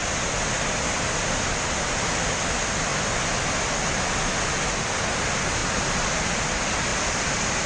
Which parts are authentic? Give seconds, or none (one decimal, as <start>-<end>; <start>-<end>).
0.0-7.7